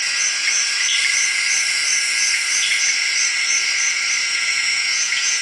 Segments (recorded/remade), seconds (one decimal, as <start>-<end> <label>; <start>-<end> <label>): 0.0-4.2 recorded; 4.2-5.4 remade